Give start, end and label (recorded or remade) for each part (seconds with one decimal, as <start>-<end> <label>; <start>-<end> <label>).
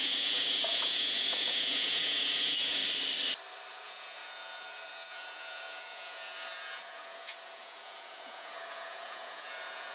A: 0.0-2.8 remade; 2.8-3.7 recorded; 3.7-9.9 remade